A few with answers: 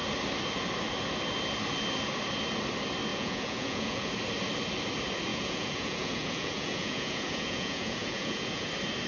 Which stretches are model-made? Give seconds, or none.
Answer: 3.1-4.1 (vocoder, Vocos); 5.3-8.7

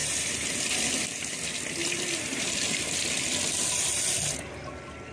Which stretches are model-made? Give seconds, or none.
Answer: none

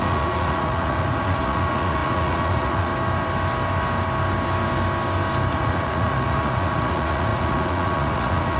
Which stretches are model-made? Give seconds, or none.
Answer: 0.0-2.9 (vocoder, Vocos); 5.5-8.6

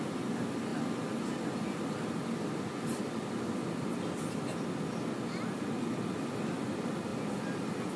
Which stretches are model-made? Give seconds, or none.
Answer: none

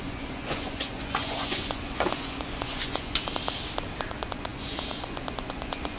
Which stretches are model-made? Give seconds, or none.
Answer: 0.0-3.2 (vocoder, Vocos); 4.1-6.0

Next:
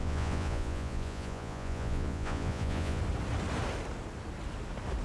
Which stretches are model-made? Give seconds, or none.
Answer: 0.0-3.0 (vocoder, Vocos)